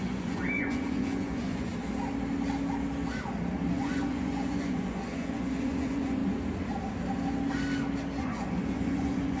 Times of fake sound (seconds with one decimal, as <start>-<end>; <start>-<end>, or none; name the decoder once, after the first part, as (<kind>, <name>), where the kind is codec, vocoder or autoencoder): 0.0-1.7 (vocoder, Vocos); 3.7-6.2; 8.2-9.4

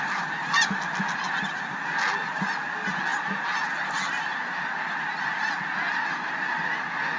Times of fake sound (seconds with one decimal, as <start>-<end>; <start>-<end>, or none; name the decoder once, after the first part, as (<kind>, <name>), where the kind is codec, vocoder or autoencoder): none

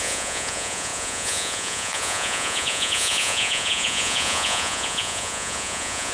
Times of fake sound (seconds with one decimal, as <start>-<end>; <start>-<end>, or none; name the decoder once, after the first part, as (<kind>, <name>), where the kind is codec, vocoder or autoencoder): 0.0-6.1 (vocoder, Vocos)